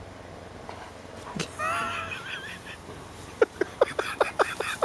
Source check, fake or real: real